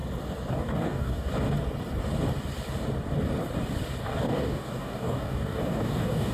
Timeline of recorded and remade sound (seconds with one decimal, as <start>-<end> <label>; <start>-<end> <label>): 0.0-0.5 recorded; 0.5-1.3 remade; 1.3-4.0 recorded; 4.0-6.3 remade